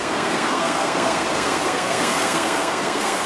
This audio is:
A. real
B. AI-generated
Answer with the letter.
B